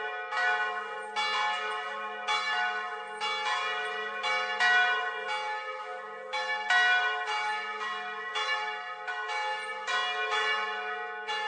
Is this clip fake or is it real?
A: real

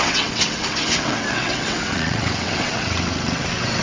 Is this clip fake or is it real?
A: fake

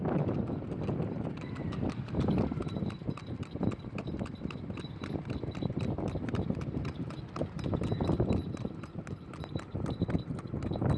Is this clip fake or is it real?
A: real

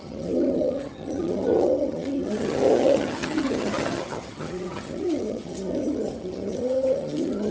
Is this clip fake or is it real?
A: fake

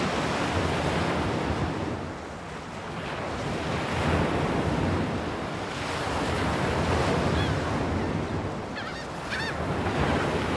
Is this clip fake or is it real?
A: real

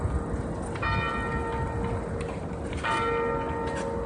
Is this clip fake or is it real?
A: real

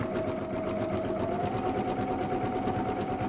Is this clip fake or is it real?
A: real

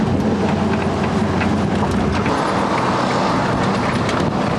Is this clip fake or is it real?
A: real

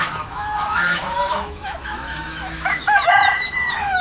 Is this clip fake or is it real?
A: fake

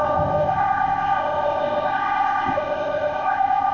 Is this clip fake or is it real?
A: fake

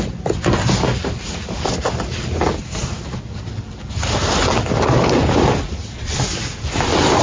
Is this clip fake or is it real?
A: real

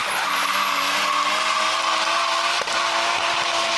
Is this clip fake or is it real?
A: real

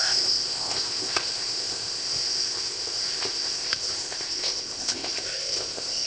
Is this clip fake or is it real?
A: fake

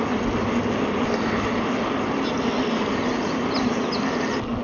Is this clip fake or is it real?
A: real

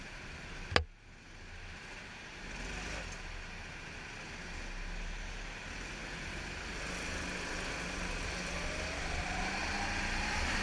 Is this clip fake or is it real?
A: real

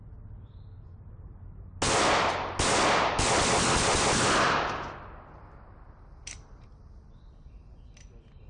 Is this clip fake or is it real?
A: real